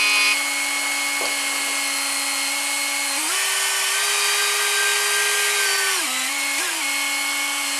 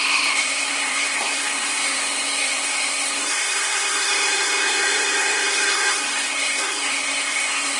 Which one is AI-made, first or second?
second